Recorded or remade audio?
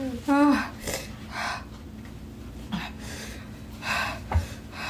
recorded